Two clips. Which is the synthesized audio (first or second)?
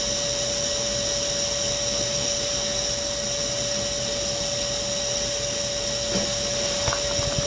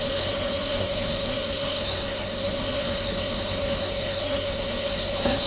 second